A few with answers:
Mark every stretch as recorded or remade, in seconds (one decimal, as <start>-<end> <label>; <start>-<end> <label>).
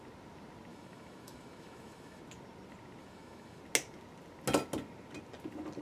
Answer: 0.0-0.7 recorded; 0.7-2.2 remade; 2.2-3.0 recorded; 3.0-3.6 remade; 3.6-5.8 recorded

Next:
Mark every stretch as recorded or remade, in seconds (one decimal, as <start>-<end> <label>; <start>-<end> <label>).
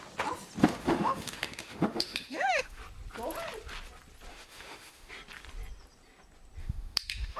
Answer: 0.0-0.6 recorded; 0.6-2.8 remade; 2.8-4.3 recorded; 4.3-5.1 remade; 5.1-6.6 recorded; 6.6-7.4 remade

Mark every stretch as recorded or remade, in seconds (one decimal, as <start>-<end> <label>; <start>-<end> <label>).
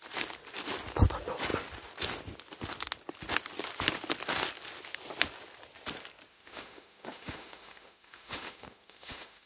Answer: 0.0-6.3 recorded; 6.3-9.5 remade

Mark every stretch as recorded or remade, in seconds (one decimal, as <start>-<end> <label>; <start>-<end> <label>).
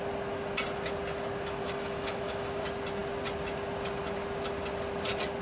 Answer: 0.0-1.6 recorded; 1.6-2.6 remade; 2.6-5.4 recorded